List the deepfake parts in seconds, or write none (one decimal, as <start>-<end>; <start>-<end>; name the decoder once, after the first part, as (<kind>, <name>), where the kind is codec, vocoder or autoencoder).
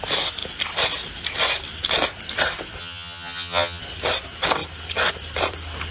2.8-3.8 (vocoder, HiFi-GAN)